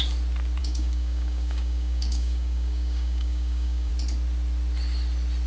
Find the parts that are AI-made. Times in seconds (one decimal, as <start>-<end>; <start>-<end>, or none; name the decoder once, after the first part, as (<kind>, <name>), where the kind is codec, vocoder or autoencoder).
0.6-3.9 (codec, DAC)